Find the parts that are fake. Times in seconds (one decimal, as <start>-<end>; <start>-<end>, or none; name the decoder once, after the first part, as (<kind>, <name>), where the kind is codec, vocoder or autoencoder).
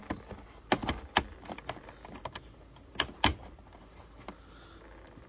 none